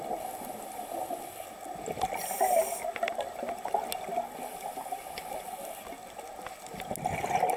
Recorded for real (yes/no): yes